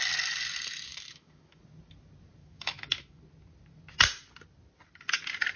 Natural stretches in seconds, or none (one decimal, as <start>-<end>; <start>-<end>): 0.0-0.9; 1.6-2.4; 3.2-5.6